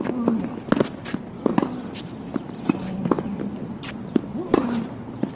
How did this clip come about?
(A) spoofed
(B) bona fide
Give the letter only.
B